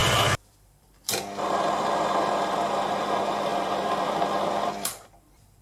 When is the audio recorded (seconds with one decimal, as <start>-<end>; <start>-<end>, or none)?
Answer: none